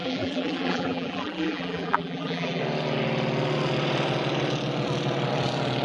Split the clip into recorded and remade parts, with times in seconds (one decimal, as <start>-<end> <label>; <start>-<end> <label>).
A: 0.0-2.6 remade; 2.6-5.8 recorded

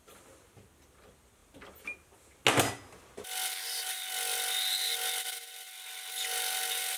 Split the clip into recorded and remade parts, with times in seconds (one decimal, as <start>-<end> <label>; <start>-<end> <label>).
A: 0.0-7.0 recorded